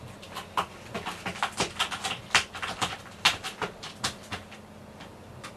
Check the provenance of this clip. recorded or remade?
recorded